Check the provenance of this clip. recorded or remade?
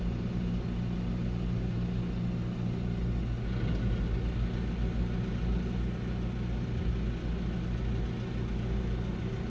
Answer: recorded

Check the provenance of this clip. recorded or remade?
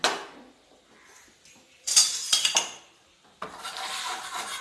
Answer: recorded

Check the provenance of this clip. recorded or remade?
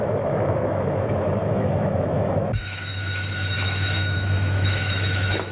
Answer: remade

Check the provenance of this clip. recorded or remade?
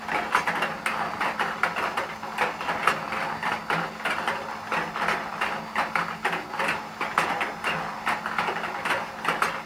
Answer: recorded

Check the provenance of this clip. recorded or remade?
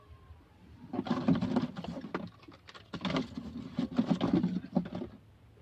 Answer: recorded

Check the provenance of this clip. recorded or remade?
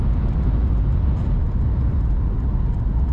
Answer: recorded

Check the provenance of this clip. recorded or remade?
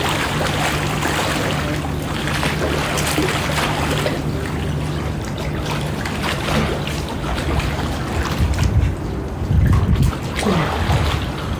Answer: recorded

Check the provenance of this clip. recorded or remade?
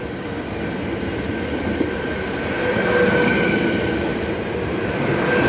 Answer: recorded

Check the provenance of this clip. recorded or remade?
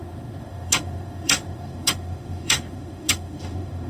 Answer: remade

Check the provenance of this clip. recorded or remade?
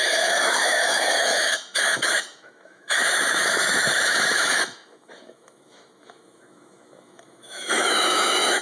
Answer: remade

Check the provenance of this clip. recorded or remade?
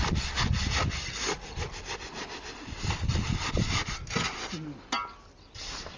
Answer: recorded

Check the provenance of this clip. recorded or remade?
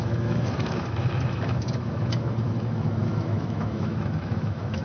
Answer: remade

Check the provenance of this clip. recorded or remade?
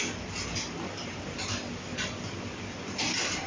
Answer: recorded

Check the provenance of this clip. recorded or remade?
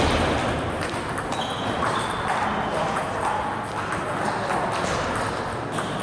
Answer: recorded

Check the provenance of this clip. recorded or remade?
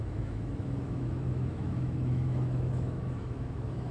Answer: remade